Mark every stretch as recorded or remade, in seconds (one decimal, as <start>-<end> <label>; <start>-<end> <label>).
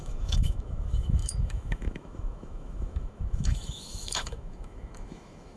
0.0-5.6 remade